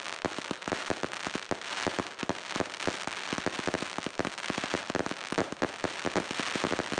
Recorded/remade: recorded